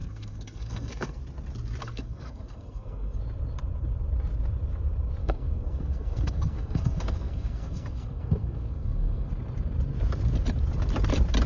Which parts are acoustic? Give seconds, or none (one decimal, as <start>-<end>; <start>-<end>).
1.2-1.8; 3.2-5.2; 9.3-11.5

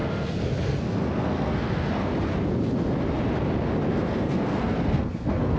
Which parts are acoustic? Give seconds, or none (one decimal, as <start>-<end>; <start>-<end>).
2.1-3.9

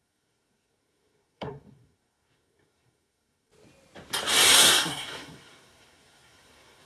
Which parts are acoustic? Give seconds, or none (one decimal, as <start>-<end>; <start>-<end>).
3.5-4.5

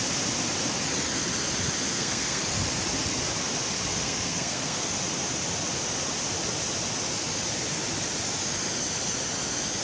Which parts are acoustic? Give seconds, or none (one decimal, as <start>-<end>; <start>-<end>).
0.0-1.9; 2.4-3.9; 4.9-9.8

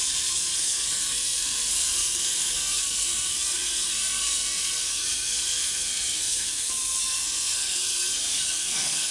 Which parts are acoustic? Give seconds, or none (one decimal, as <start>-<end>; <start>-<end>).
none